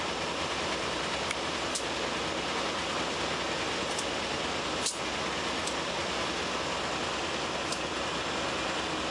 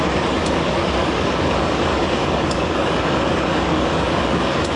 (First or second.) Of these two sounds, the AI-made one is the second